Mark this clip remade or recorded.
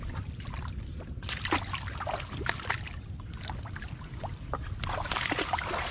recorded